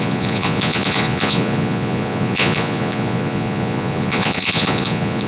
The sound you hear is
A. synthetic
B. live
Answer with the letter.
A